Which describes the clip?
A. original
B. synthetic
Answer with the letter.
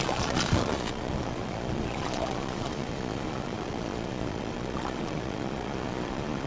B